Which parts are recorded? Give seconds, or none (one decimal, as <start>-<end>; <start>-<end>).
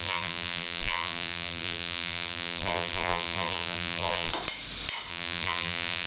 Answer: 4.3-5.1